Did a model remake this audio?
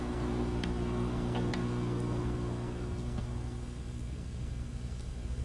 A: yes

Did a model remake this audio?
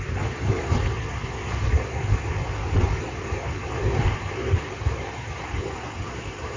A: yes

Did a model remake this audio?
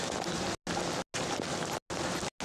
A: no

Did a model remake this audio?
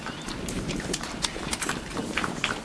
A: yes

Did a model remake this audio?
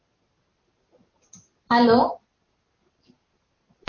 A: no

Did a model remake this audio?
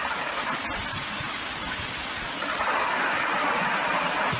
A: no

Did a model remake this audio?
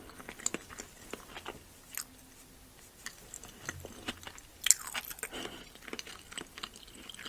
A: no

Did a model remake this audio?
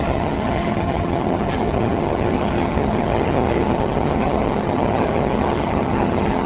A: yes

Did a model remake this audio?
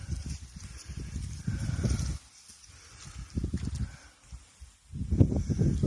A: no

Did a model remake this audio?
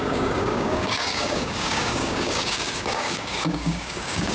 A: yes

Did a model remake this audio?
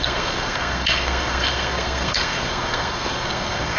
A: yes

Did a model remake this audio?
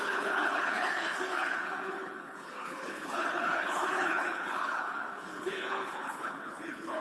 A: yes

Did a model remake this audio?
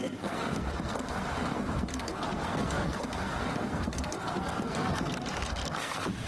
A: yes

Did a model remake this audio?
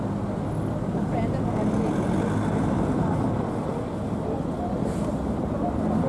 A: no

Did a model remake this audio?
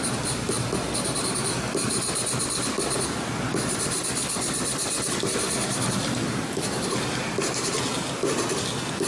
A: no